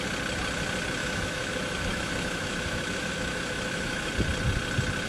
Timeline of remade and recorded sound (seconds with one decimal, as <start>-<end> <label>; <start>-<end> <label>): 0.0-1.0 recorded; 1.0-4.1 remade; 4.1-5.1 recorded